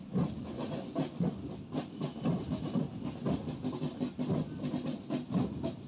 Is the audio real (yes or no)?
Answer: yes